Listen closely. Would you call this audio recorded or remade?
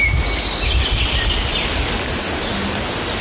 recorded